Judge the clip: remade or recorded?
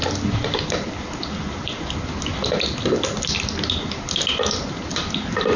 recorded